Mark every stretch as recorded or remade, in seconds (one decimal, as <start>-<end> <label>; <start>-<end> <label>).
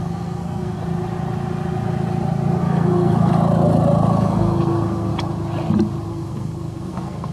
0.0-0.8 remade; 0.8-2.6 recorded; 2.6-3.3 remade; 3.3-4.1 recorded; 4.1-5.1 remade; 5.1-6.1 recorded; 6.1-7.3 remade